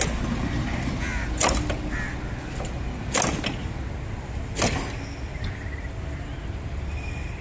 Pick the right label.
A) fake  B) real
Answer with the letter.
B